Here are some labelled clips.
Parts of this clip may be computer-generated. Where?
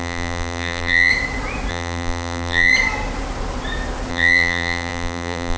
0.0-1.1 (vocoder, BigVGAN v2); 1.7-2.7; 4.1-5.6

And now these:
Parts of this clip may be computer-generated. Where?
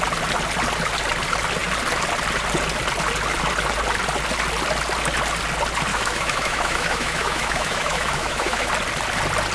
5.9-8.7 (autoencoder, DAC-VAE)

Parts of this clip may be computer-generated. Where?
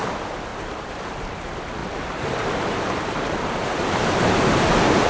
0.5-1.4 (vocoder, BigVGAN v2); 1.8-5.1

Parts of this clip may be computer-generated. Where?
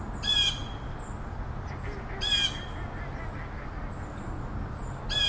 none